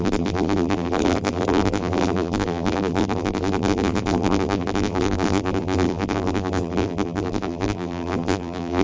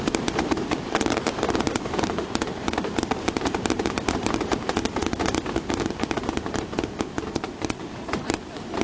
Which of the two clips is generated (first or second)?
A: first